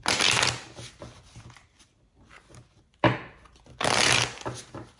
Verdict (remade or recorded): recorded